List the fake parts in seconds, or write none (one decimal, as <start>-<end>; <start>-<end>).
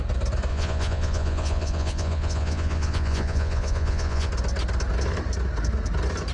0.5-4.3